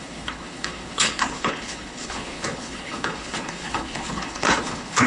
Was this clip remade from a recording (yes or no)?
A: yes